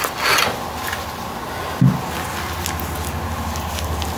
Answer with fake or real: real